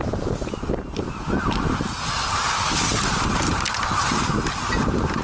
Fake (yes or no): no